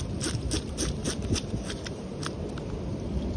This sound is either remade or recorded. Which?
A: recorded